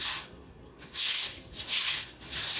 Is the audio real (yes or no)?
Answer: no